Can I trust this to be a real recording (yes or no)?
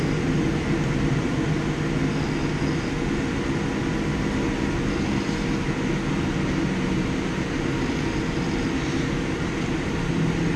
yes